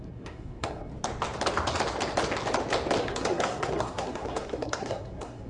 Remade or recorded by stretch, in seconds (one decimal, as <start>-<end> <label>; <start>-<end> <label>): 0.0-0.9 remade; 0.9-3.0 recorded; 3.0-5.5 remade